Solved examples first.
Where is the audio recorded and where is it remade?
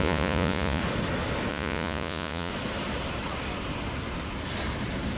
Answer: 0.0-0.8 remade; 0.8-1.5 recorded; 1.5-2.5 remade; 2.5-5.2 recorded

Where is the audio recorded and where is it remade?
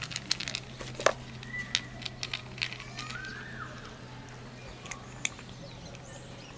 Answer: 0.0-6.6 recorded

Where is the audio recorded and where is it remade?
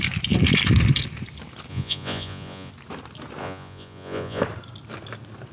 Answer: 0.0-1.7 recorded; 1.7-2.7 remade; 2.7-3.4 recorded; 3.4-4.4 remade; 4.4-5.5 recorded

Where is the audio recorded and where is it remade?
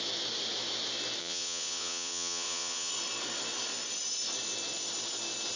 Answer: 0.0-1.2 recorded; 1.2-2.9 remade; 2.9-5.6 recorded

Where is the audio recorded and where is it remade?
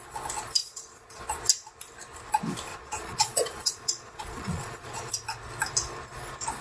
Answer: 0.0-0.6 recorded; 0.6-1.2 remade; 1.2-2.7 recorded; 2.7-5.1 remade; 5.1-6.6 recorded